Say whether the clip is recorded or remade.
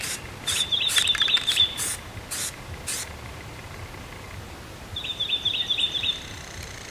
remade